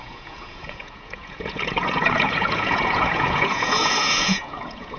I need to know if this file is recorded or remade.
remade